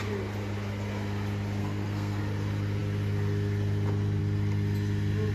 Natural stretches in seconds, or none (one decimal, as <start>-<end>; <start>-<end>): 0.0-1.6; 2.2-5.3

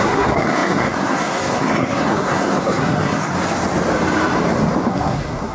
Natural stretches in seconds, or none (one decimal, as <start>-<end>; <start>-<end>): 3.3-4.9

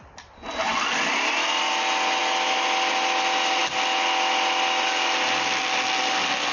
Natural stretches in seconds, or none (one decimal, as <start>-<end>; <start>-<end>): 0.0-6.5

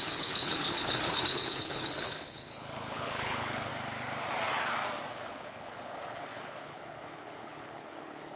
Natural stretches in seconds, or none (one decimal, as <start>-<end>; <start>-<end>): 3.7-5.1